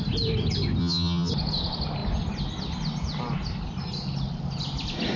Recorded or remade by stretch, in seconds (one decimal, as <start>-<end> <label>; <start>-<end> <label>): 0.0-0.8 recorded; 0.8-1.3 remade; 1.3-5.2 recorded